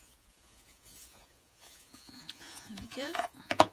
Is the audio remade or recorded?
remade